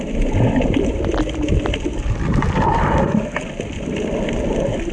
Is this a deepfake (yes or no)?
no